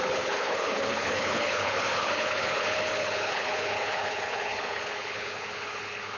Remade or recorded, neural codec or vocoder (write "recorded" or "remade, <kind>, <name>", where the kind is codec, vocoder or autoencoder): remade, codec, HILCodec